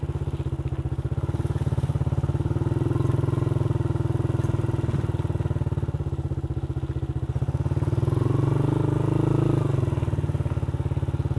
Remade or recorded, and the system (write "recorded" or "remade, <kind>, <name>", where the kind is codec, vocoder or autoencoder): recorded